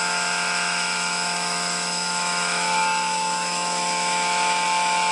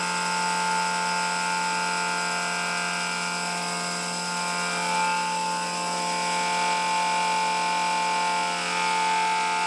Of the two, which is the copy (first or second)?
first